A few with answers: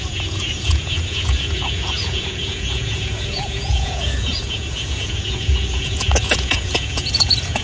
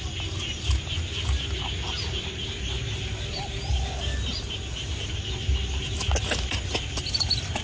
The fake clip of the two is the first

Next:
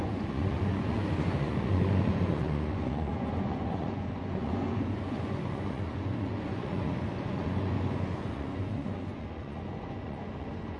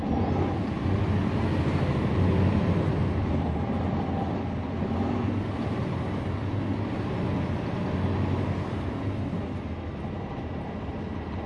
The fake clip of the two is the first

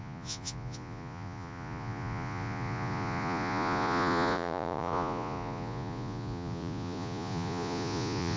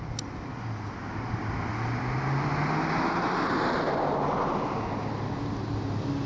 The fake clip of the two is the first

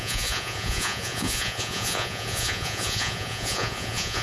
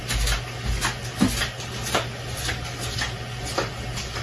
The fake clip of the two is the first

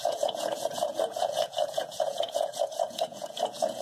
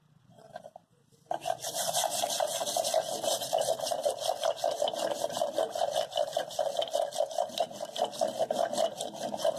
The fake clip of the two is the first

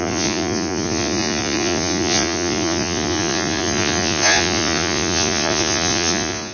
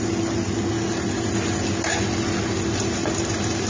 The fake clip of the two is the first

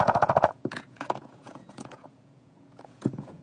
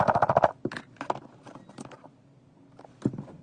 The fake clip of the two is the first